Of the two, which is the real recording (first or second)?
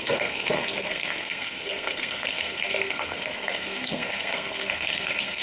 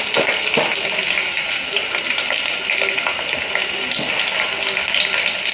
second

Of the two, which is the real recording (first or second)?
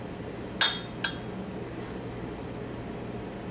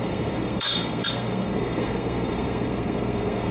first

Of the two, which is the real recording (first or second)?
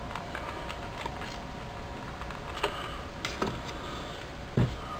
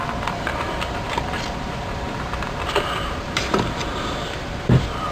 first